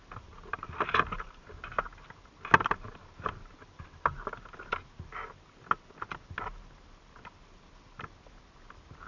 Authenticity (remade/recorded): recorded